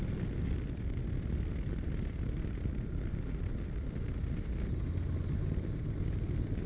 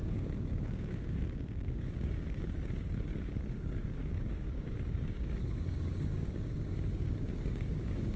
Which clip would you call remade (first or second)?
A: second